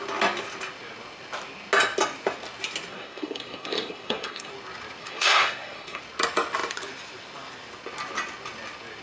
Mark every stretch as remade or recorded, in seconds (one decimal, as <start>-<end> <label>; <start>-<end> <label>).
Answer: 0.0-2.9 recorded; 2.9-4.5 remade; 4.5-5.0 recorded; 5.0-6.0 remade; 6.0-9.0 recorded